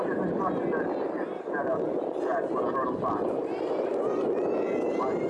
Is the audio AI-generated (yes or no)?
yes